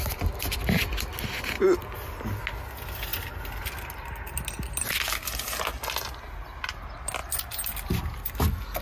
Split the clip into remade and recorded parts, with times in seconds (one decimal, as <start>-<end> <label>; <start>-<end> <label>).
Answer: 0.0-8.8 recorded